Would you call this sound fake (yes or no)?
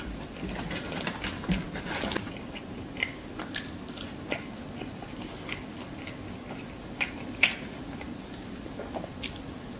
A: no